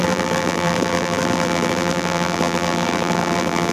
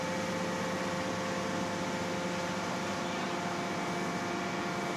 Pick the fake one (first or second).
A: first